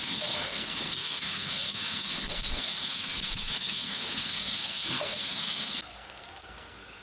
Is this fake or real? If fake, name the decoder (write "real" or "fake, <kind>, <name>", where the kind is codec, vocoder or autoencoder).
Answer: fake, codec, SNAC